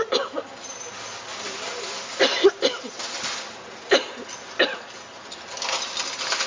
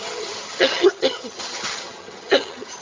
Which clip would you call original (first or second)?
first